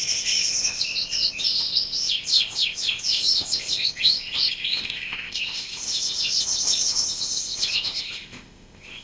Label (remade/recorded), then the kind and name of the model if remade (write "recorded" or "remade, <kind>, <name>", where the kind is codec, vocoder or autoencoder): remade, codec, ZipCodec